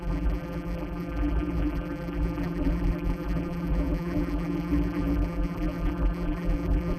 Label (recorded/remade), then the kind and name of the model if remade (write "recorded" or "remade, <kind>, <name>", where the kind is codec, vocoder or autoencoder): remade, vocoder, BigVGAN v2